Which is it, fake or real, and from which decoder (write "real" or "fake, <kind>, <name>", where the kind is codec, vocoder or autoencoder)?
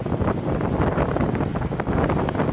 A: real